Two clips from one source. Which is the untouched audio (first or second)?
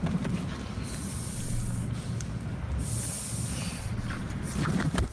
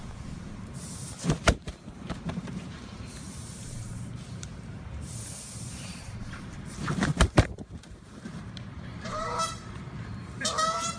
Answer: first